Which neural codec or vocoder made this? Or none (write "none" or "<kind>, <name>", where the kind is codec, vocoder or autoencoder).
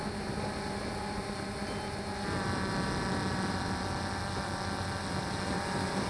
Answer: none